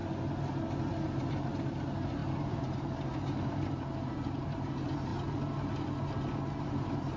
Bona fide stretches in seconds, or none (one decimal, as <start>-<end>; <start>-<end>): 0.0-0.9; 5.1-6.6